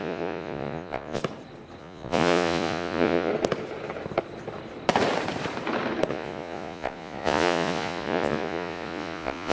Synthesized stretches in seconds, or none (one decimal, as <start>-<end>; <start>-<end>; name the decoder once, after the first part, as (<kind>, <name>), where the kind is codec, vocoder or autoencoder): 0.0-1.2 (vocoder, Vocos); 1.8-3.3; 6.1-9.5